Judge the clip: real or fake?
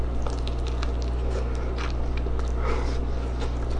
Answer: real